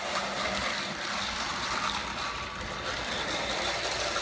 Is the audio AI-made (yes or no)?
no